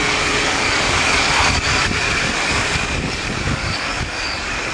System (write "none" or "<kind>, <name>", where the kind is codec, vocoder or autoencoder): codec, DAC